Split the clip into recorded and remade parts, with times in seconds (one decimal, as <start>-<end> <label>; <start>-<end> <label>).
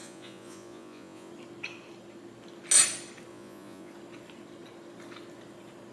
0.0-1.3 remade; 1.3-3.3 recorded; 3.3-3.9 remade; 3.9-5.9 recorded